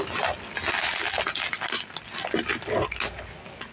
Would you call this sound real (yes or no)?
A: yes